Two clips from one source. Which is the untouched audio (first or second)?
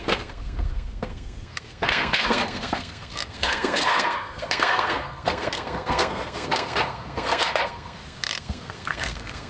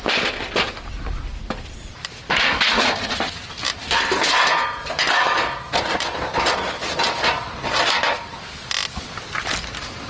second